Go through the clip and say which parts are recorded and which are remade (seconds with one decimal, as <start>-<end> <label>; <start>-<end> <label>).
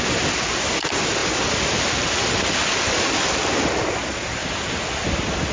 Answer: 0.0-5.5 recorded